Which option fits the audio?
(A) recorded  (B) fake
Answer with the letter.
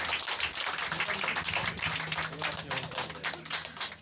A